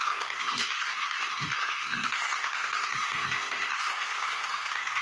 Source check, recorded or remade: remade